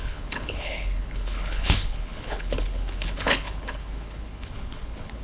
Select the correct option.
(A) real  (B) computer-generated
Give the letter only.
B